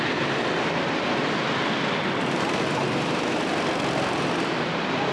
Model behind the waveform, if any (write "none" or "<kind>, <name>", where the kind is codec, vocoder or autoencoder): vocoder, BigVGAN v2